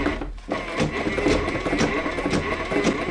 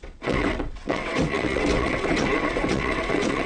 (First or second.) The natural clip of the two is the first